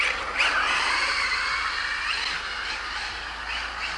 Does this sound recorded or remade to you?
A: recorded